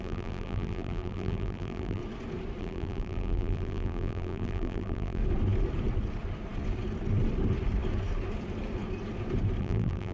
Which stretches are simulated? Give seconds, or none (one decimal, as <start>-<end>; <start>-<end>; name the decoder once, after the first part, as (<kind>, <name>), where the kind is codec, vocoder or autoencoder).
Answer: 0.0-2.0 (vocoder, BigVGAN v2); 2.6-5.2; 9.6-10.1